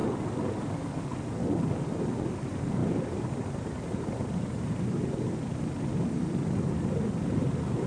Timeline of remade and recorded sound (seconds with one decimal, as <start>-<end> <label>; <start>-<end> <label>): 0.0-2.8 recorded; 2.8-4.6 remade; 4.6-7.9 recorded